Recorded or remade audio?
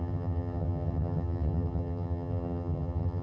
remade